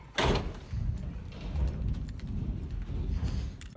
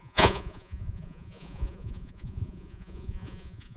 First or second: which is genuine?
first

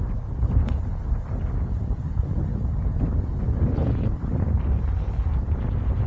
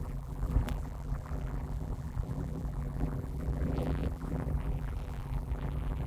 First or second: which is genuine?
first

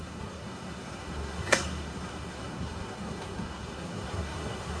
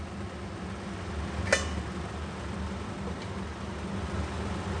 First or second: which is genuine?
second